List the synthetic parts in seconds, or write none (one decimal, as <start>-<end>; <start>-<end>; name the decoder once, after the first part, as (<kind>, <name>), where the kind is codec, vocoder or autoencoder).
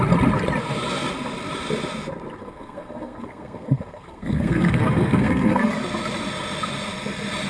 2.4-5.7 (codec, SNAC)